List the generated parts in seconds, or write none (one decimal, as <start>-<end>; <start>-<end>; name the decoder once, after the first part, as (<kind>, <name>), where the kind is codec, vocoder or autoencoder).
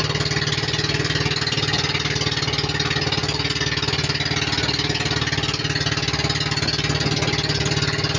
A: none